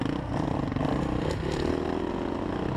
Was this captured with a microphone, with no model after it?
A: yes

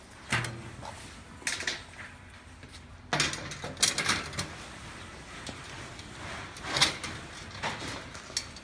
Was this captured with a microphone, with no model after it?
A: yes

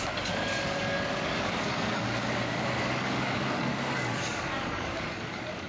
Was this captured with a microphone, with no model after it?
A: no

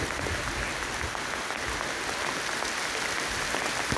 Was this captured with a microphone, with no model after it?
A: yes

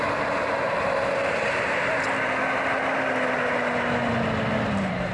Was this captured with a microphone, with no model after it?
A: no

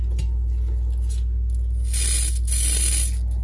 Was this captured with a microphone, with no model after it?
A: yes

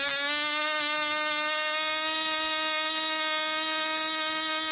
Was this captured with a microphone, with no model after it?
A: yes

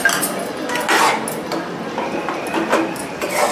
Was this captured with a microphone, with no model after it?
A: yes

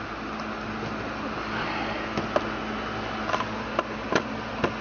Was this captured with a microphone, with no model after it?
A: yes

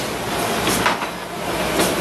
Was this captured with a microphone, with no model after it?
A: yes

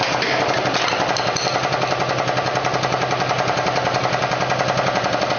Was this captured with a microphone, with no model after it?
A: yes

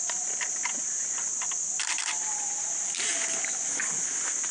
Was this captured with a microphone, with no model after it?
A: yes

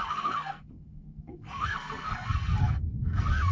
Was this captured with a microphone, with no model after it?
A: no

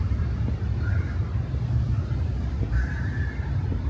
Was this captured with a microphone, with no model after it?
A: no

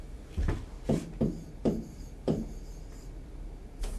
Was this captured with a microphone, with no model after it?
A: yes